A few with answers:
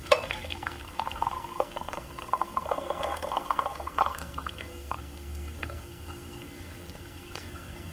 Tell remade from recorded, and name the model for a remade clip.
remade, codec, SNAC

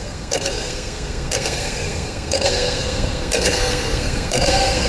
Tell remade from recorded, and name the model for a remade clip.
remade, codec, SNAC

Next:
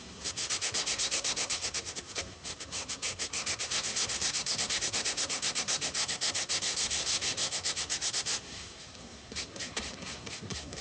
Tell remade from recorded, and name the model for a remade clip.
remade, codec, SNAC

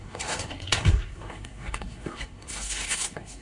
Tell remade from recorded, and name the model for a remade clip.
remade, codec, SNAC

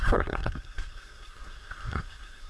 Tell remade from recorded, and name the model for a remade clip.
remade, codec, SNAC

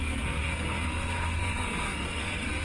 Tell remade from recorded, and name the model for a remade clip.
remade, codec, SNAC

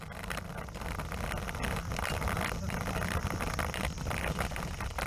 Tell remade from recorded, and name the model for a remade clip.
recorded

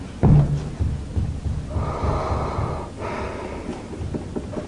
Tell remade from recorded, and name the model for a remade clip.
recorded